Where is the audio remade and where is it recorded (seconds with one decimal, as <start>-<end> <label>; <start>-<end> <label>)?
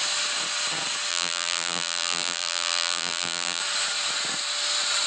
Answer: 0.0-1.1 recorded; 1.1-3.6 remade; 3.6-5.1 recorded